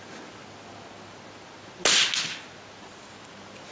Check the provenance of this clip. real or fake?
real